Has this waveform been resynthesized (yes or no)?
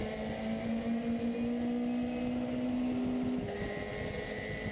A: no